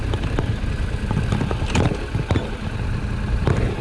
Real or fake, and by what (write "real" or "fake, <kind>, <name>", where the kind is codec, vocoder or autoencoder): real